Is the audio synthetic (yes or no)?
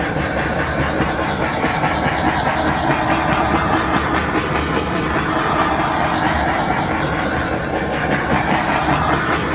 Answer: no